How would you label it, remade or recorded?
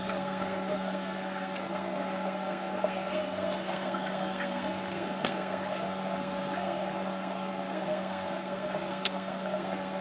remade